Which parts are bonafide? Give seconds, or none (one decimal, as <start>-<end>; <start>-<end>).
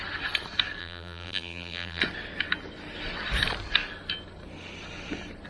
0.0-0.8; 2.0-5.5